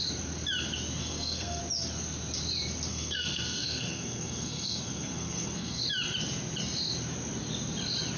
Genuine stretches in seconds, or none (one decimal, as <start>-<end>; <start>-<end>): 0.0-1.0; 1.6-2.9; 5.8-8.2